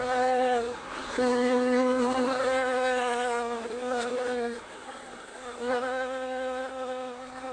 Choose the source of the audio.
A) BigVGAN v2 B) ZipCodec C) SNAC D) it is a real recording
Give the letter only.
C